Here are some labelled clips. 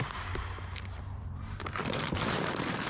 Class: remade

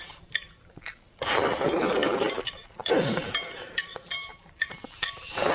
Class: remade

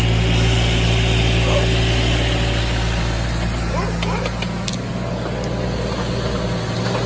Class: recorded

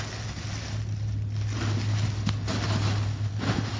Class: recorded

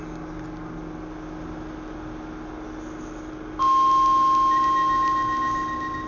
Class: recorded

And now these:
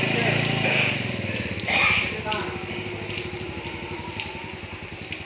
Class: recorded